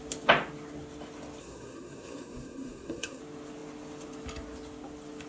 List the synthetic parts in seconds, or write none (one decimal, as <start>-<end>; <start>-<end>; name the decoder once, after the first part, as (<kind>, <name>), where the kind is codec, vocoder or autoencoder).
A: 1.4-3.2 (codec, SNAC)